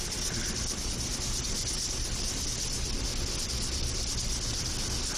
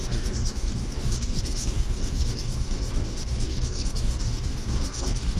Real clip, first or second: first